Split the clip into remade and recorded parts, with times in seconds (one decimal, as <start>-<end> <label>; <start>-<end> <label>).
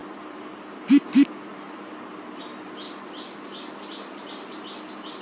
0.0-1.5 recorded; 1.5-2.1 remade; 2.1-5.2 recorded